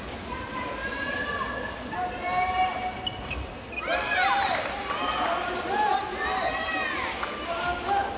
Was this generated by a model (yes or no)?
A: no